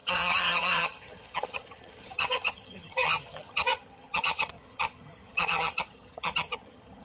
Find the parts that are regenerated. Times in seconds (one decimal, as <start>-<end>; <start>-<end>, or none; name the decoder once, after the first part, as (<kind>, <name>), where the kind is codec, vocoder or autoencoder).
0.0-7.0 (vocoder, HiFi-GAN)